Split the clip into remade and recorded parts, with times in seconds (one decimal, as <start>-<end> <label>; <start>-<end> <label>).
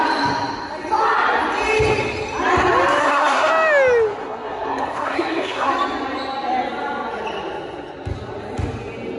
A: 0.0-3.0 recorded; 3.0-3.5 remade; 3.5-4.2 recorded; 4.2-5.7 remade; 5.7-9.2 recorded